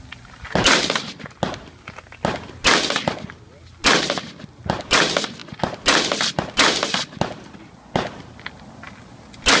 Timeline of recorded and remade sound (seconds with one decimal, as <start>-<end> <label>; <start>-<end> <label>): 0.0-9.6 recorded